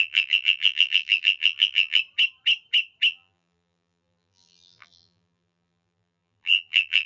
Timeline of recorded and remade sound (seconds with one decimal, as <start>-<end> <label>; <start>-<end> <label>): 0.0-2.0 remade; 2.0-3.1 recorded; 3.1-7.1 remade